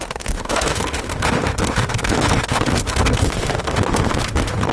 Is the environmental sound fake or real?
fake